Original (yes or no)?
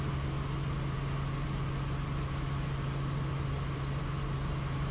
yes